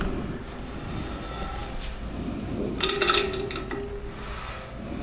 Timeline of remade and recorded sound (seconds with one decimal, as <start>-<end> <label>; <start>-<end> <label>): 0.0-5.0 recorded